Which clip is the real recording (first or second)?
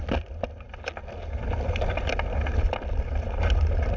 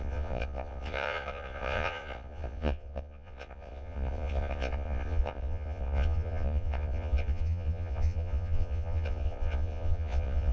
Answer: first